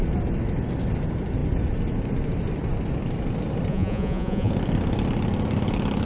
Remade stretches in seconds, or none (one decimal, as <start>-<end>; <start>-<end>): 3.7-4.5